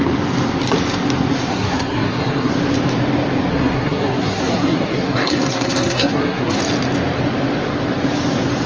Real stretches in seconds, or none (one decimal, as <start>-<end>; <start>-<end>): 0.0-1.5; 2.5-3.5; 6.6-8.7